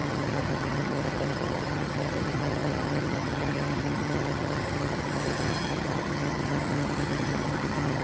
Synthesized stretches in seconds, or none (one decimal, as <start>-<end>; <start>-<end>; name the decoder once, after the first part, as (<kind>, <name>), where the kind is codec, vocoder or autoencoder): 0.0-8.0 (vocoder, HiFi-GAN)